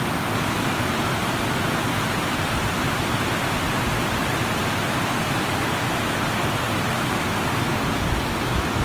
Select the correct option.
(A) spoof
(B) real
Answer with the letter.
B